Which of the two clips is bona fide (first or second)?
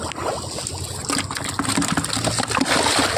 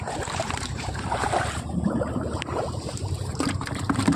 first